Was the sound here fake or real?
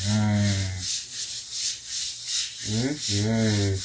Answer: real